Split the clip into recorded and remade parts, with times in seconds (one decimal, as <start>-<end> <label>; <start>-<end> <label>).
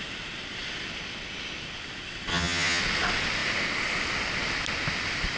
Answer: 0.0-2.3 recorded; 2.3-2.8 remade; 2.8-5.4 recorded